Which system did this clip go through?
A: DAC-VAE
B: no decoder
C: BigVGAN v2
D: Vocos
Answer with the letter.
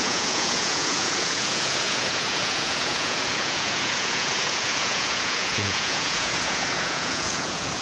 D